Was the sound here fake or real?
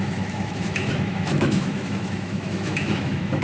fake